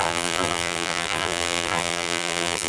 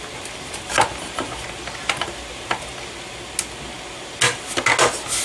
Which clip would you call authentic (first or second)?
second